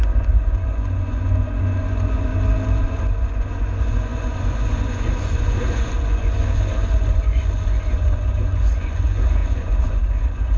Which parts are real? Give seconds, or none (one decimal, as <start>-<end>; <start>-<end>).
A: 2.3-2.8